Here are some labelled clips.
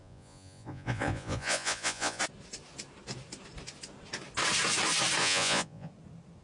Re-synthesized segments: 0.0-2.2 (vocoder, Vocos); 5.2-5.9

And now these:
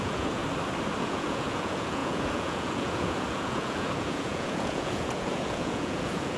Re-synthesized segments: 0.0-0.4 (vocoder, Vocos); 1.0-6.4

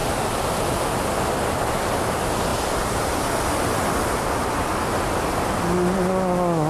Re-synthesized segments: none

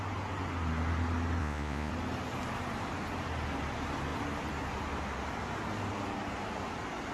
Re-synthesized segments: 1.4-1.9 (vocoder, Vocos)

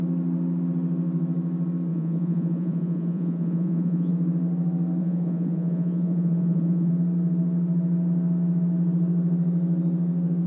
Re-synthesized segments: 1.9-4.1 (vocoder, Vocos); 5.0-6.9

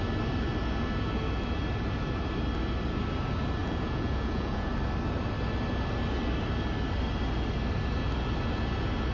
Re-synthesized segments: 3.6-4.7 (vocoder, Vocos)

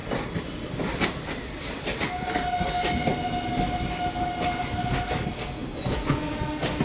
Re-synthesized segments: 5.7-6.3 (vocoder, Vocos)

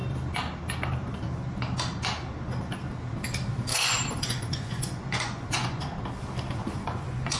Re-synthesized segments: 3.7-5.8 (vocoder, Vocos); 6.6-7.4